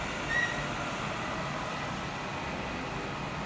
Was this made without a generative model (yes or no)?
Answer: yes